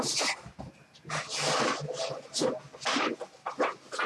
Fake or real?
real